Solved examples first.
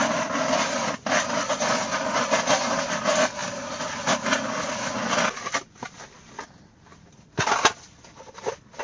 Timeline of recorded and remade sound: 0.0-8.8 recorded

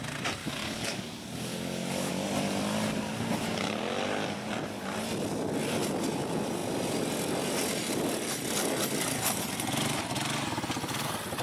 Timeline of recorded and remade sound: 0.0-0.4 recorded; 0.4-2.1 remade; 2.1-11.4 recorded

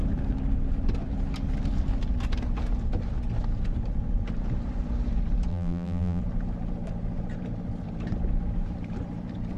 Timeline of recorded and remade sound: 0.0-5.5 recorded; 5.5-6.2 remade; 6.2-9.6 recorded

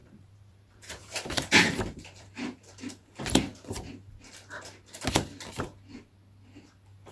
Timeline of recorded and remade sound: 0.0-2.8 remade; 2.8-7.1 recorded